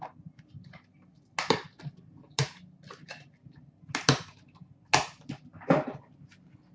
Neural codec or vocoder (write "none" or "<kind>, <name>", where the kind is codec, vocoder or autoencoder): none